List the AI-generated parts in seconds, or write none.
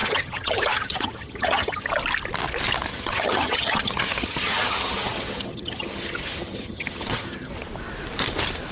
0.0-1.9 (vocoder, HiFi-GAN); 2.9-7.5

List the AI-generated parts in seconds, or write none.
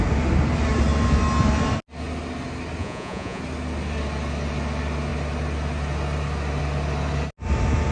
2.8-3.4 (vocoder, Vocos)